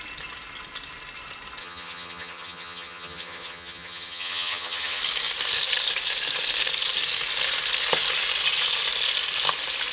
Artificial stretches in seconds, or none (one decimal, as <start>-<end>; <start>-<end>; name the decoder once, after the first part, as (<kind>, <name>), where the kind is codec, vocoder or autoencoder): 1.6-5.0 (vocoder, HiFi-GAN)